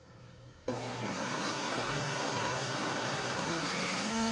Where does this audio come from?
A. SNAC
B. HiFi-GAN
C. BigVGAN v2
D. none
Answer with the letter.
A